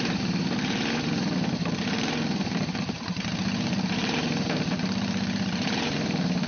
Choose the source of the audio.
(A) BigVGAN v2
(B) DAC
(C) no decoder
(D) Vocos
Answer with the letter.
A